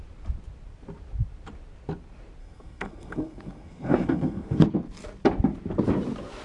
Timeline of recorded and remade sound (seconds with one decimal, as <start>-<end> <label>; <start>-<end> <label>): 0.0-2.4 recorded; 2.4-4.6 remade; 4.6-6.4 recorded